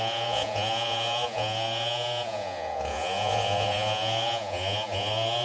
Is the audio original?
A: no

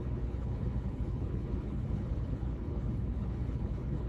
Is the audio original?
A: no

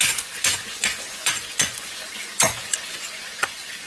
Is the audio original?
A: no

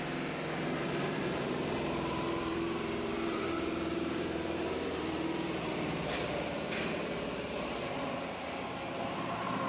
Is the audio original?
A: no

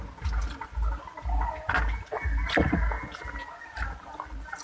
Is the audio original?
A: yes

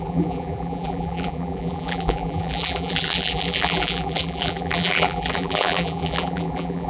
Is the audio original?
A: no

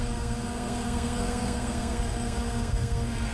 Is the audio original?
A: no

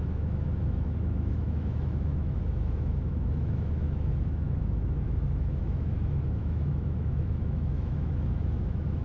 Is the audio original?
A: no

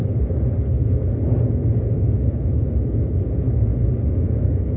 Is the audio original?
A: yes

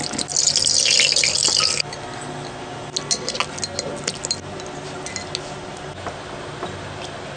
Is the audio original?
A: yes